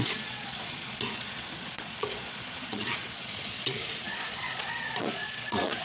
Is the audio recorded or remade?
remade